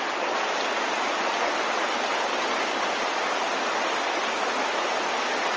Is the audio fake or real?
real